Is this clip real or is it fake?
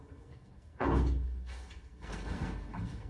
fake